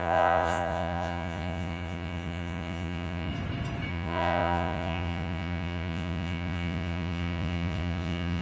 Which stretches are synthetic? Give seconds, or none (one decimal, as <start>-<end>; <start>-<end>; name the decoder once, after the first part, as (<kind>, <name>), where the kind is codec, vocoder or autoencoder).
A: 0.0-3.3 (vocoder, Vocos); 3.9-8.4

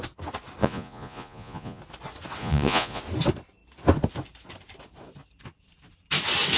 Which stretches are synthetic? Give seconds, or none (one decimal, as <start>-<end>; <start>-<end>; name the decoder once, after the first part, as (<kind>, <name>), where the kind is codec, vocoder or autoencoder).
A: 0.6-1.8 (vocoder, Vocos); 2.4-3.0

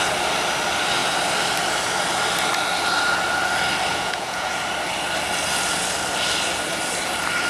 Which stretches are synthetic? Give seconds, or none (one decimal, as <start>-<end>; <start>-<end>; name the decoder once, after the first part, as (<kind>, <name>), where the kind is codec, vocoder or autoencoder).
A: 3.9-4.5 (vocoder, Vocos)

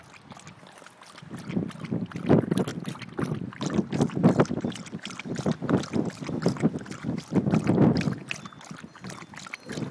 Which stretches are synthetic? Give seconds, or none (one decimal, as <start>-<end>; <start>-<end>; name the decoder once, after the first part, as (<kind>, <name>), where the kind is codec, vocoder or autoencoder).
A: none

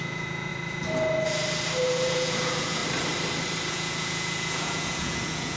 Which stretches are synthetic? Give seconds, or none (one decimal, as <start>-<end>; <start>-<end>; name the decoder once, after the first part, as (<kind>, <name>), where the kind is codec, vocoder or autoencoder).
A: 0.0-0.5 (vocoder, Vocos); 1.8-2.8; 3.7-5.6